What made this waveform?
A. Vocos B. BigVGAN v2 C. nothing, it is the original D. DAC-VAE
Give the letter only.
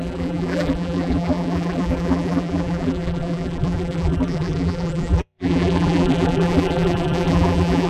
B